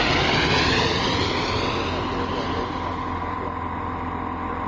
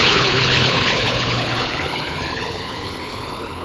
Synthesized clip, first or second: second